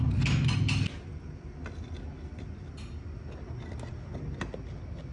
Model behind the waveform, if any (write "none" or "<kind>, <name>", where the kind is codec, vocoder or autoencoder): none